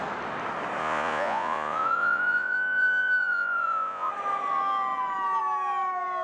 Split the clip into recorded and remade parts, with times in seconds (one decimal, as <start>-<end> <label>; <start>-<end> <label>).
0.0-0.8 recorded; 0.8-4.1 remade; 4.1-6.2 recorded